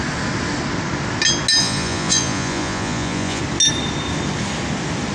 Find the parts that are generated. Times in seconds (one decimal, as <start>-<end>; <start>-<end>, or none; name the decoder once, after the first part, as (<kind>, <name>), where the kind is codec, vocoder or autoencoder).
1.6-3.4 (vocoder, Vocos)